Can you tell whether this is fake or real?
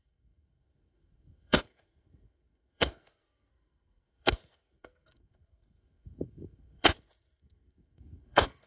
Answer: fake